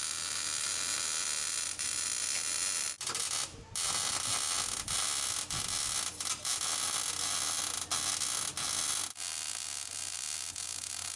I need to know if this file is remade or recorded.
recorded